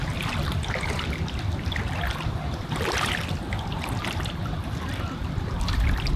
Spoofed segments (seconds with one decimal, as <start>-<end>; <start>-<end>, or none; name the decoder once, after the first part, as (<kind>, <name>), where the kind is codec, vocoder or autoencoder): none